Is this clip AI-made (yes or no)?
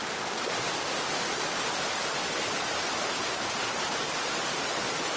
no